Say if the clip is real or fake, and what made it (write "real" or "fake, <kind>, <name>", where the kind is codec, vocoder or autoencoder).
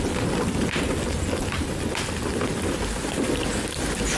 real